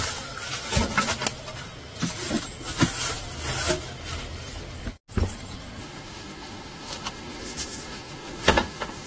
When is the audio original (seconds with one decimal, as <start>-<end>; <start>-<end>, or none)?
0.0-5.8

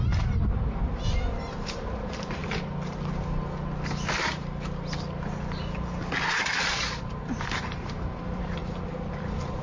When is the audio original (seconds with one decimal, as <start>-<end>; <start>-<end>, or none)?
0.8-1.4; 2.4-7.0; 8.6-9.1

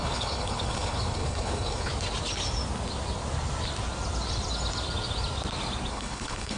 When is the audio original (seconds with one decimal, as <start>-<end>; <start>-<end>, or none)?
1.9-5.9